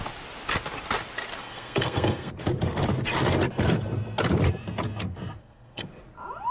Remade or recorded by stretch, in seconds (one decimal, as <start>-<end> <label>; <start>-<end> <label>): 0.0-1.4 recorded; 1.4-2.3 remade; 2.3-5.4 recorded; 5.4-5.9 remade; 5.9-6.5 recorded